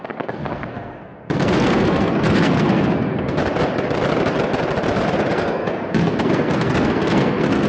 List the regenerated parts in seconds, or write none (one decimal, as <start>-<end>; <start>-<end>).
0.0-3.4; 5.3-7.7